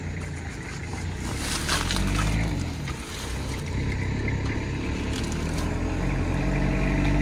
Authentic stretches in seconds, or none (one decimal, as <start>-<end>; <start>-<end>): 0.0-7.2